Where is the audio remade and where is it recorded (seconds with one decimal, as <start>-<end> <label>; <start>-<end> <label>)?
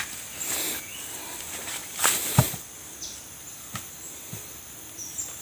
0.0-5.4 recorded